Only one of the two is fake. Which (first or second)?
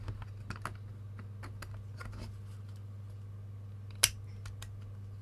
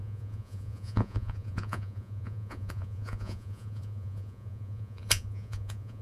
second